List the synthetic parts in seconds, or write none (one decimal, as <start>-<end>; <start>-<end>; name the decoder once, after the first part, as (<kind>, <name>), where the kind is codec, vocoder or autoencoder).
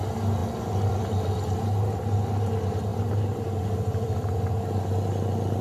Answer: 2.9-4.4 (vocoder, BigVGAN v2)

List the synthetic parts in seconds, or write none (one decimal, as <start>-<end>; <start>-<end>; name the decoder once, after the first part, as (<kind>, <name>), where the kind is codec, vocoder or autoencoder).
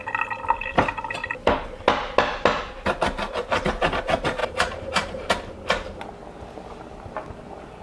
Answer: 4.4-5.3 (vocoder, BigVGAN v2)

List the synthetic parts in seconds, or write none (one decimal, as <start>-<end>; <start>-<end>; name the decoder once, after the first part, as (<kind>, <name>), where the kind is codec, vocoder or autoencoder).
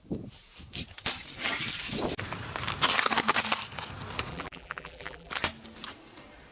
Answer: 4.3-5.3 (vocoder, BigVGAN v2)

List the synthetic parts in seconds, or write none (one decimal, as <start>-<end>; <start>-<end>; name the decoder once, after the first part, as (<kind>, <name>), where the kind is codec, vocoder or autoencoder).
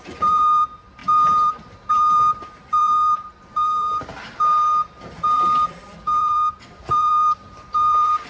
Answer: 0.0-8.3 (vocoder, BigVGAN v2)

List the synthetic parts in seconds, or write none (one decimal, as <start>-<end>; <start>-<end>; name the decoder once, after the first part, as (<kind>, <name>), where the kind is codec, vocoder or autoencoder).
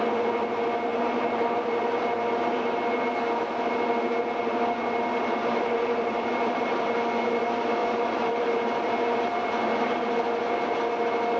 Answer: 0.9-1.5 (vocoder, BigVGAN v2); 5.5-6.7; 7.8-8.9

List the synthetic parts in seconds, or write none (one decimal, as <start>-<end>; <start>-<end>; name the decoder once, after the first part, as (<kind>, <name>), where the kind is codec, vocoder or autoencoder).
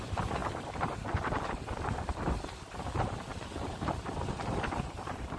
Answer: 0.0-0.4 (vocoder, BigVGAN v2); 2.3-5.4